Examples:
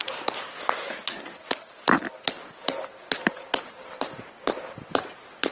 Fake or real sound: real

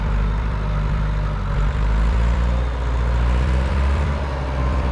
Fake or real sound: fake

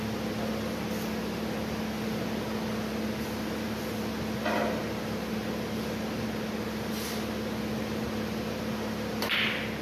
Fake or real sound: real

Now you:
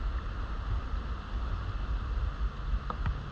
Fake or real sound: real